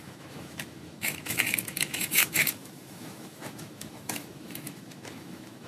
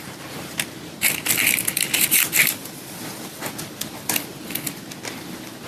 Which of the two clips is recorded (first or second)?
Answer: second